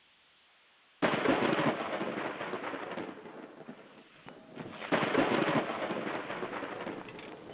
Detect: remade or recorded recorded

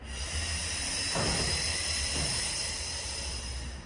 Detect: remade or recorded recorded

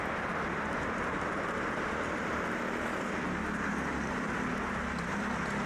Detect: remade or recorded recorded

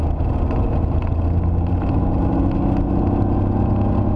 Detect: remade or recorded recorded